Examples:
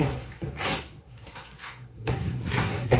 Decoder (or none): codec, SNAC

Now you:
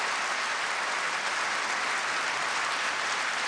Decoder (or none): none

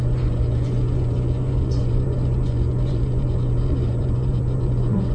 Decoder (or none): vocoder, Vocos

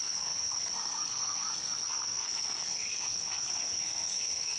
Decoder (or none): codec, SNAC